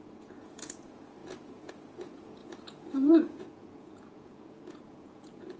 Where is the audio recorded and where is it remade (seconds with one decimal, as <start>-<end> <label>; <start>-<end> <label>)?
0.0-5.6 remade

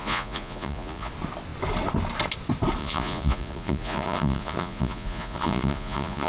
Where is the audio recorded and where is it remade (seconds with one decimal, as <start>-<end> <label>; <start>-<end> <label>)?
0.0-1.1 remade; 1.1-2.8 recorded; 2.8-6.3 remade

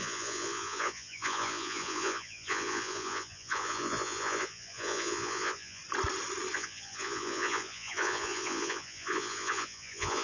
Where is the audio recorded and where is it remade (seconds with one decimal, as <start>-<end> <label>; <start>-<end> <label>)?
0.0-5.8 remade; 5.8-6.5 recorded; 6.5-10.2 remade